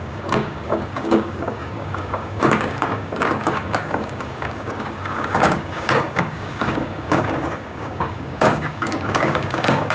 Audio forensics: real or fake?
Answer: fake